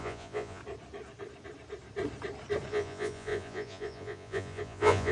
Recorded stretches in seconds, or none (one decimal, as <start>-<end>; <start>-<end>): 0.6-2.7